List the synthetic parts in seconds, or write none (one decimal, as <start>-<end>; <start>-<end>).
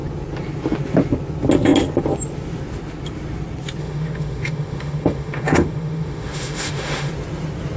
3.8-7.1